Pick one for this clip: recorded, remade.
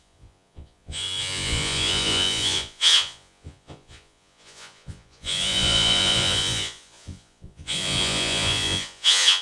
remade